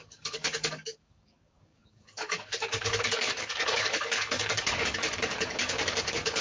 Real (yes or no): no